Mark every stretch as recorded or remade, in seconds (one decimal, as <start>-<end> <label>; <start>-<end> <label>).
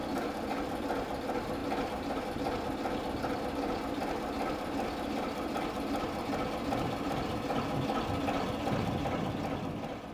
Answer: 0.0-0.5 remade; 0.5-1.6 recorded; 1.6-2.2 remade; 2.2-10.1 recorded